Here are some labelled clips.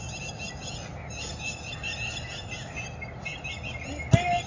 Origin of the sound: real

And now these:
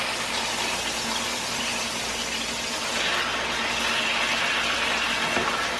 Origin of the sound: real